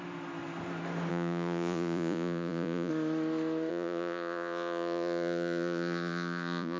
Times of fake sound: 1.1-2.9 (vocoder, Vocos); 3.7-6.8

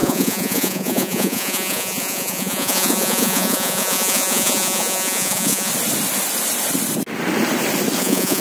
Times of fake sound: 0.0-5.7 (vocoder, Vocos); 8.0-8.4

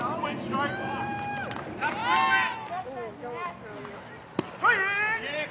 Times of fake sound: none